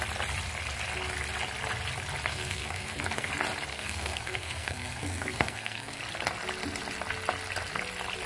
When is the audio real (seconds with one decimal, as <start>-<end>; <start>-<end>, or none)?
0.0-2.3; 3.3-3.7; 6.0-8.3

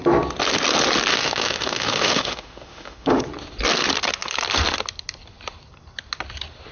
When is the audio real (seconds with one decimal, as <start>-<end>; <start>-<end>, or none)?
0.0-1.1; 3.2-6.7

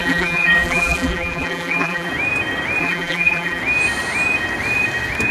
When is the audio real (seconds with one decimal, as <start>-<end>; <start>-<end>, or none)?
2.1-2.8; 3.6-5.3